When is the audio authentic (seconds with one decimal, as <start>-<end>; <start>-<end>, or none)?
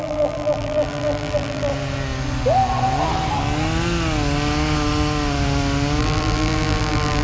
1.7-6.0